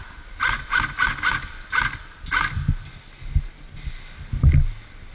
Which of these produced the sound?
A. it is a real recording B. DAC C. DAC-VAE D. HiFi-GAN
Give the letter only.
A